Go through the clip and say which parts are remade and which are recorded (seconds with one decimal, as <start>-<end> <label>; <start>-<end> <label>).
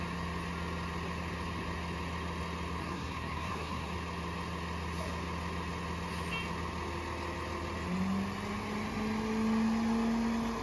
0.0-2.8 recorded; 2.8-3.9 remade; 3.9-10.6 recorded